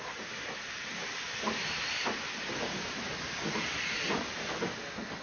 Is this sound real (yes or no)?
yes